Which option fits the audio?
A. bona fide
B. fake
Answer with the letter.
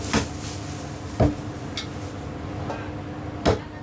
A